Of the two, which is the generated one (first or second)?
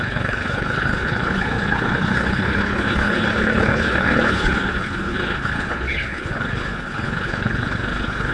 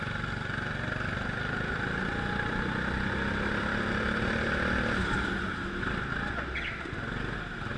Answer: first